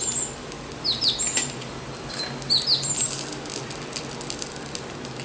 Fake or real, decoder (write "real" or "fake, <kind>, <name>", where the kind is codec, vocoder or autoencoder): real